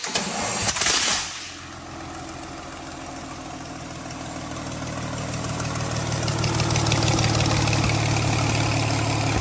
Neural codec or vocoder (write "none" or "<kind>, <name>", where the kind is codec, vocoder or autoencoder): none